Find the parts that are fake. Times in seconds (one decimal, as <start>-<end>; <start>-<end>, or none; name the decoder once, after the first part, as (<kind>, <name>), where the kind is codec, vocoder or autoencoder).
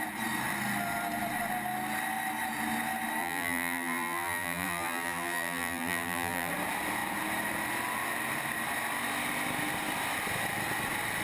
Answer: 3.2-6.5 (vocoder, BigVGAN v2)